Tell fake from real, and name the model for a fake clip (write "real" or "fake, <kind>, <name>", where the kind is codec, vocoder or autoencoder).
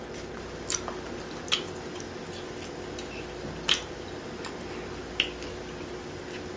real